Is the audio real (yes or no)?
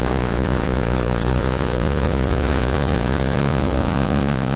no